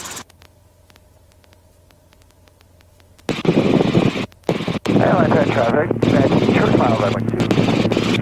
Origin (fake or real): real